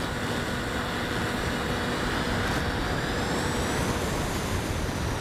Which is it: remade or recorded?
recorded